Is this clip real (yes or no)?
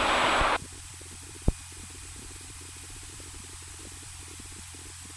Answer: yes